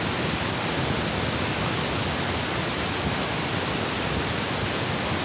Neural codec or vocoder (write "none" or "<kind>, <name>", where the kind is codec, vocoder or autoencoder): none